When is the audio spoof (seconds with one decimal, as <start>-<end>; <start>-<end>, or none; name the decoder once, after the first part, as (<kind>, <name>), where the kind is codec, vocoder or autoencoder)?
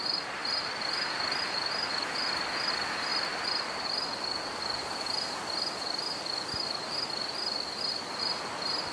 none